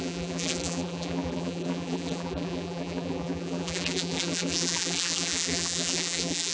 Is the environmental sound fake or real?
fake